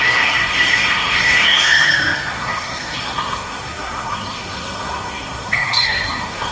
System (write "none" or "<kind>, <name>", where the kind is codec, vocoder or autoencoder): codec, SNAC